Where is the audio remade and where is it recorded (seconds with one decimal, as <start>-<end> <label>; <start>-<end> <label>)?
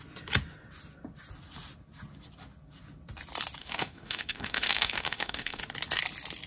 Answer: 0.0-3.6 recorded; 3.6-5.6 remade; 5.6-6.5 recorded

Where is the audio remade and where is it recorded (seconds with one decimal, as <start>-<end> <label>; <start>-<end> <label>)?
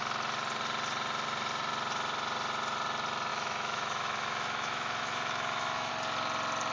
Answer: 0.0-3.3 recorded; 3.3-5.9 remade; 5.9-6.7 recorded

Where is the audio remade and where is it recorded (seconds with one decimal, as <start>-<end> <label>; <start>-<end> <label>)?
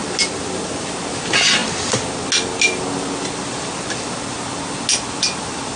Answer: 0.0-5.8 recorded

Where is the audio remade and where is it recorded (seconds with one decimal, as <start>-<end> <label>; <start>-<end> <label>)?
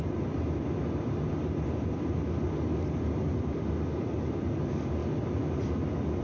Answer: 0.0-6.2 recorded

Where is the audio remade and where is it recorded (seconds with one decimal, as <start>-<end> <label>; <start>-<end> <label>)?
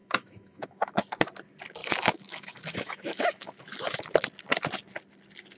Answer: 0.0-1.0 remade; 1.0-1.8 recorded; 1.8-4.0 remade; 4.0-5.6 recorded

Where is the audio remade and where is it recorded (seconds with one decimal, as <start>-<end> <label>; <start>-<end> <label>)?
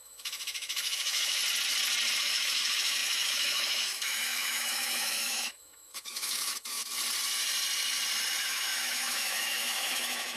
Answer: 0.0-1.4 remade; 1.4-2.2 recorded; 2.2-6.8 remade; 6.8-8.4 recorded; 8.4-10.4 remade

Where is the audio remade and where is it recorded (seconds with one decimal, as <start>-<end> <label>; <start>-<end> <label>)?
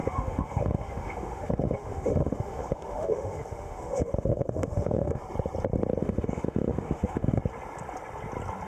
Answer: 0.0-5.2 remade; 5.2-6.0 recorded; 6.0-7.4 remade; 7.4-8.7 recorded